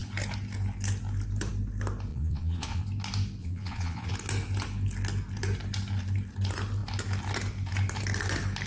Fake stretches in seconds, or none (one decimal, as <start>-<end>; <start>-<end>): 2.1-2.8; 3.4-4.1